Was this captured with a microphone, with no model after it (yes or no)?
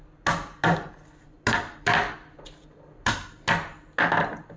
yes